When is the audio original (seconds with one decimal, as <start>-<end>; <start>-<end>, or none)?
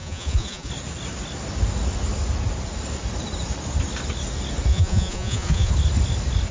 0.7-4.7; 5.7-6.5